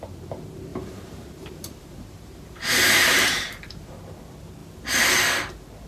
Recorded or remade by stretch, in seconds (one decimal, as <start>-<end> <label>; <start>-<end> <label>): 0.0-0.7 recorded; 0.7-3.9 remade; 3.9-5.9 recorded